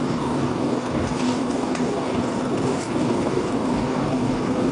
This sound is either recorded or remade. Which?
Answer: remade